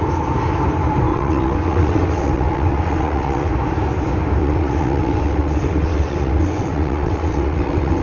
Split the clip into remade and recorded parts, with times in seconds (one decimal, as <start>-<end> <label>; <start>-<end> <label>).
0.0-1.1 recorded; 1.1-3.5 remade; 3.5-4.4 recorded; 4.4-8.0 remade